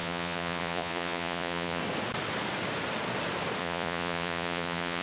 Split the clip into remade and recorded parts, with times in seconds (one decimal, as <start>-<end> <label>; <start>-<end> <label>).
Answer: 0.0-1.8 remade; 1.8-3.6 recorded; 3.6-5.0 remade

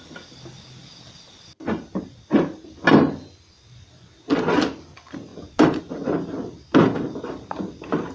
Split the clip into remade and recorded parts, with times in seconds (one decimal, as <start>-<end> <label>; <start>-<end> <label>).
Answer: 0.0-8.1 recorded

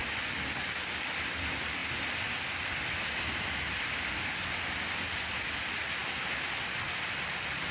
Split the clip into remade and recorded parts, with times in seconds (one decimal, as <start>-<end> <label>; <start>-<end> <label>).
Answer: 0.0-7.7 recorded

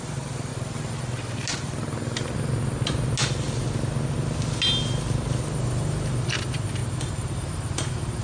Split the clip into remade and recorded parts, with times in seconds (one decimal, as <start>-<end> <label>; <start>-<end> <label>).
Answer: 0.0-0.5 remade; 0.5-5.4 recorded; 5.4-8.2 remade